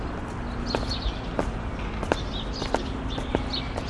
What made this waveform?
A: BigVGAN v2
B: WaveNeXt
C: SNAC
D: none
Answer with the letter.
D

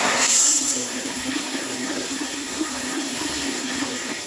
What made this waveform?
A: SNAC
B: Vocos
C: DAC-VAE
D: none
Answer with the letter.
A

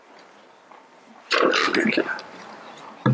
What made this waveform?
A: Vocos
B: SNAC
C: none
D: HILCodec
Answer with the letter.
C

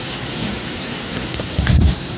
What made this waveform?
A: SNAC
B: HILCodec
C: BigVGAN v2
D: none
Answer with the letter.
A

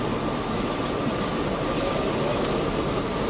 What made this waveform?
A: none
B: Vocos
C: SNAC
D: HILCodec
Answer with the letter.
A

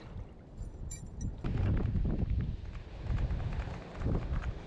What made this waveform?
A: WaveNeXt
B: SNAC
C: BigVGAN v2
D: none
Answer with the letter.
D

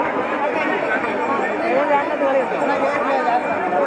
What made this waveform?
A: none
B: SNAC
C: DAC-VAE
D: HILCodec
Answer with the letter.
A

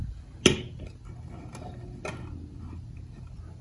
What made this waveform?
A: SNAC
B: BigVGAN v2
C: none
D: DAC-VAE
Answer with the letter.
C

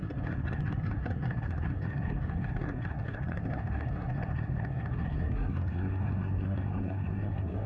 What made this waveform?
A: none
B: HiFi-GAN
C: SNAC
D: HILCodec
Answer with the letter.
C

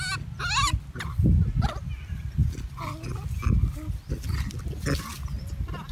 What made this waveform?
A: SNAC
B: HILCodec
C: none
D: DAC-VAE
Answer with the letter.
C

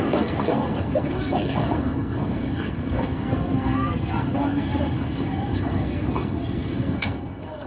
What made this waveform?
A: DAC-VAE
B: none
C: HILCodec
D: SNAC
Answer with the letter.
D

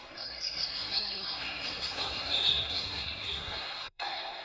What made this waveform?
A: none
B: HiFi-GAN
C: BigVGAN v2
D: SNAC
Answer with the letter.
D